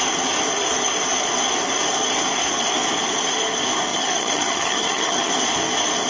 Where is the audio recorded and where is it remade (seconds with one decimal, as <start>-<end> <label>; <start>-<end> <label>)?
0.0-3.9 recorded; 3.9-5.3 remade; 5.3-6.1 recorded